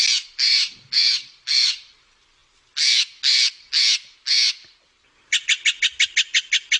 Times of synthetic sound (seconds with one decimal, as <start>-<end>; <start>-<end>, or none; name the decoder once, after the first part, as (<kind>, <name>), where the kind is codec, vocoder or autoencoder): none